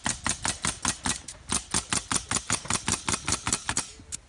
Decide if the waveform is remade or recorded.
recorded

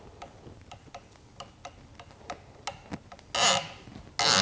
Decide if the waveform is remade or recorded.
recorded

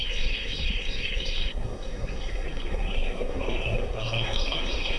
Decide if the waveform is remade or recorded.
remade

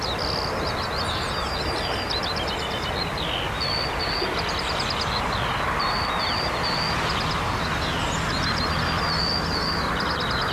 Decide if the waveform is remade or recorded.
recorded